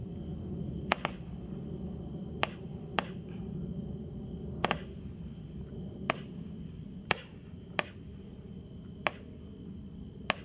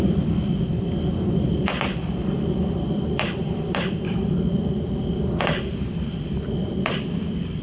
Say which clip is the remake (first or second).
second